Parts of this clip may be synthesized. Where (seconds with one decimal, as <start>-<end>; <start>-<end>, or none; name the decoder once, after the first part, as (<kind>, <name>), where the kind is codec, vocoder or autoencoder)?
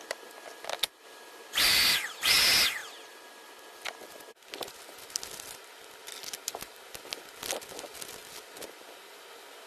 none